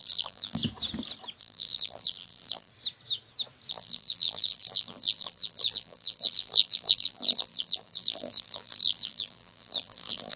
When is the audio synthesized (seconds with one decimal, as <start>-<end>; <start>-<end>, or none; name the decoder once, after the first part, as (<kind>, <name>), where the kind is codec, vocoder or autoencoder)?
0.0-0.6 (vocoder, BigVGAN v2); 1.4-2.7; 3.7-10.4